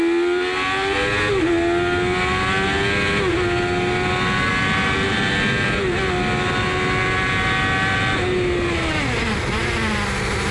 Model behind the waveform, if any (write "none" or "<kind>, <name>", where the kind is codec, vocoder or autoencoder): none